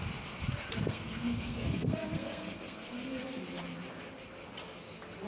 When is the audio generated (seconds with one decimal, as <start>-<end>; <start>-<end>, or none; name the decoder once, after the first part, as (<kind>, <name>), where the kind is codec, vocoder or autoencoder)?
0.9-3.2 (codec, SNAC)